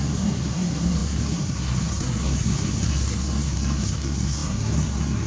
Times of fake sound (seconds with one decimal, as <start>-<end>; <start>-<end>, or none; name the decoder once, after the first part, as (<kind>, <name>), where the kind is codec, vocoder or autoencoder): 0.0-5.3 (codec, SNAC)